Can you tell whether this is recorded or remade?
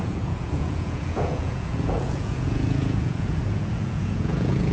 remade